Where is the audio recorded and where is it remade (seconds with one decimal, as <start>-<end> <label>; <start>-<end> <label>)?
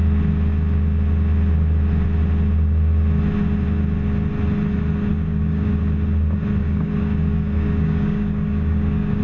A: 0.0-5.1 recorded; 5.1-5.7 remade; 5.7-6.6 recorded; 6.6-9.2 remade